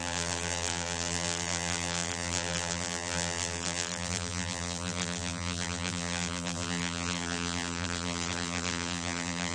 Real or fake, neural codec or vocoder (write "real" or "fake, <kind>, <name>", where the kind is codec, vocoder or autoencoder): fake, vocoder, BigVGAN v2